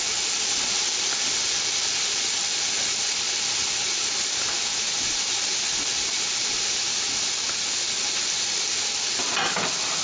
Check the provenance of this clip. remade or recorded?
recorded